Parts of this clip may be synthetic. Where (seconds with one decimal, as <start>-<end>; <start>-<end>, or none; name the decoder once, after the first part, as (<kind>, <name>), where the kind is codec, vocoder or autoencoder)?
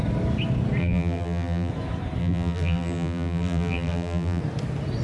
0.8-1.7 (vocoder, BigVGAN v2); 2.2-4.4